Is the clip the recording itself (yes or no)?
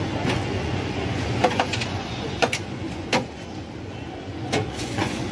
no